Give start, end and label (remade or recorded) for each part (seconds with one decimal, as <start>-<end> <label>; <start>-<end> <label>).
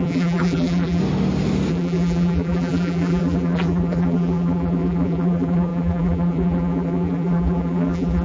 0.0-1.0 remade; 1.0-1.7 recorded; 1.7-8.2 remade